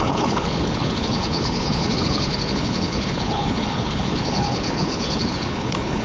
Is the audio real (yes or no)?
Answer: no